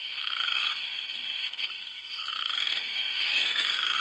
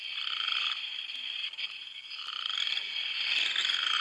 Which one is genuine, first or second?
second